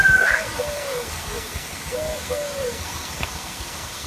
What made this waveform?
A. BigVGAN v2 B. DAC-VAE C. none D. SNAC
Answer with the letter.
D